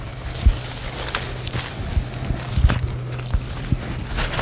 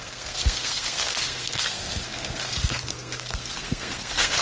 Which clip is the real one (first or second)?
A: first